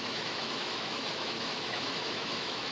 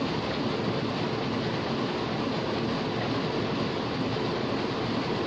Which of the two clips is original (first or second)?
second